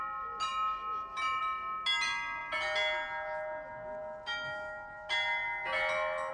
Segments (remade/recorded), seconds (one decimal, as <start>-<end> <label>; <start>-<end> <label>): 0.0-6.3 recorded